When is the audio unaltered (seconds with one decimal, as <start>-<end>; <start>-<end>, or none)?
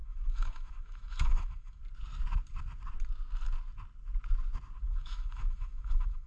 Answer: 1.8-4.8